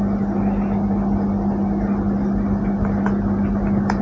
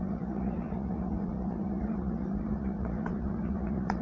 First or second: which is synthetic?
second